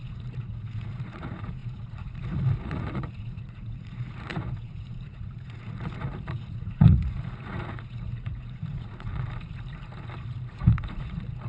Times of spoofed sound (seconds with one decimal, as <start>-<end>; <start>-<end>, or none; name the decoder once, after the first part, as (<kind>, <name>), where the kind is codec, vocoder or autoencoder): 0.0-9.1 (vocoder, Vocos); 10.5-11.5